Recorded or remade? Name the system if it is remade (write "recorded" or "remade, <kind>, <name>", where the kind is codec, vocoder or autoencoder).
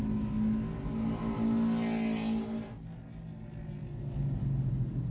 recorded